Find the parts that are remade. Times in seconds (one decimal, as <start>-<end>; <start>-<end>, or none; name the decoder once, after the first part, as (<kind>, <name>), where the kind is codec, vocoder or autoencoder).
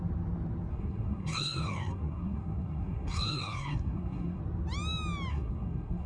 0.7-4.4 (codec, SNAC); 5.3-6.1